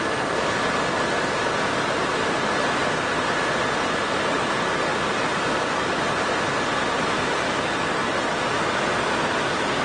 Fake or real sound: real